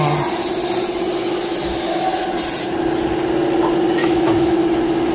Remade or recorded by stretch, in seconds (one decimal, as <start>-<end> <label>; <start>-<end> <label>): 0.0-4.0 recorded; 4.0-4.5 remade; 4.5-5.1 recorded